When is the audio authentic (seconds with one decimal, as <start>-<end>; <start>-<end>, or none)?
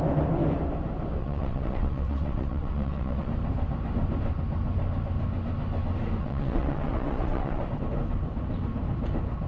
0.0-1.2; 3.3-6.2; 7.6-9.5